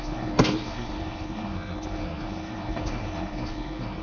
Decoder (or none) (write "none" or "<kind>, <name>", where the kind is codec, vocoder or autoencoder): codec, SNAC